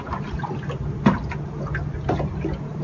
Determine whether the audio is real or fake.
real